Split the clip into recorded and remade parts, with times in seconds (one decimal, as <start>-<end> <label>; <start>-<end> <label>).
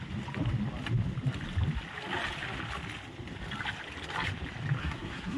0.0-4.8 recorded; 4.8-5.4 remade